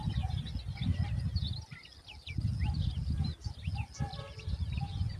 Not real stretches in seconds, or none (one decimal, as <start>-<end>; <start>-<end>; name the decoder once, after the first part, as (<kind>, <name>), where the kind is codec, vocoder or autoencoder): none